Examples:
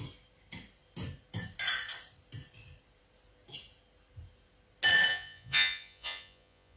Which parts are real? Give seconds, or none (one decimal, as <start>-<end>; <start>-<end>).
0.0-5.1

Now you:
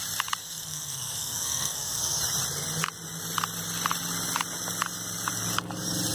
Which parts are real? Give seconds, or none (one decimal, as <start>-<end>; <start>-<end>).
0.0-0.4; 2.2-6.1

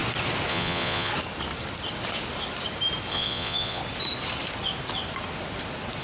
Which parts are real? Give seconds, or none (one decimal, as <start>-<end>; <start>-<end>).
0.0-0.5; 1.1-3.1; 3.8-6.0